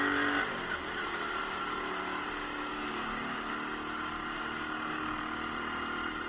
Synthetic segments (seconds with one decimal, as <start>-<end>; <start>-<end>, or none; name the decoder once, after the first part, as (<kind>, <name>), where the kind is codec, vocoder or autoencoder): 2.7-3.5 (codec, DAC); 4.2-5.2